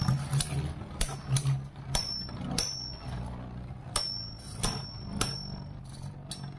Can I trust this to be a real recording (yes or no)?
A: yes